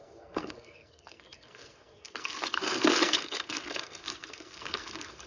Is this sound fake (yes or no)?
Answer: yes